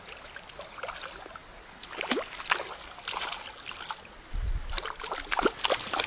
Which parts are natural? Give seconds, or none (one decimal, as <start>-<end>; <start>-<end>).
0.0-6.1